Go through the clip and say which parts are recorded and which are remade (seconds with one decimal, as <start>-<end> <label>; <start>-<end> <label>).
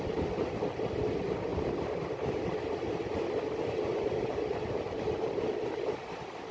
0.0-6.5 recorded